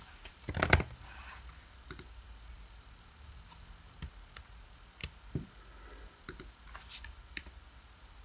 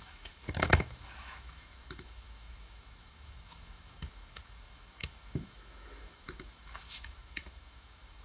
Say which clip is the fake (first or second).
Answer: second